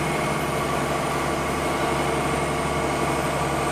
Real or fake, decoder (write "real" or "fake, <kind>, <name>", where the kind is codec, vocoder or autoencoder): real